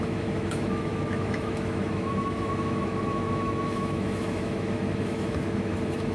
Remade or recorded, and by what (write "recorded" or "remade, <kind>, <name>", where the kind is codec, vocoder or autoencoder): remade, autoencoder, DAC-VAE